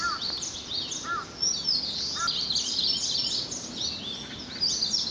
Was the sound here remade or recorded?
recorded